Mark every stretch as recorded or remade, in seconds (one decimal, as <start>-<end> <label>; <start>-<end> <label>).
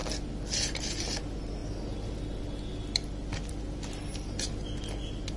0.0-5.4 recorded